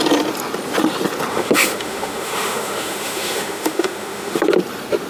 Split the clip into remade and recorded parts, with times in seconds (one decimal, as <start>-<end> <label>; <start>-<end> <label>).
0.0-1.3 recorded; 1.3-4.4 remade; 4.4-5.1 recorded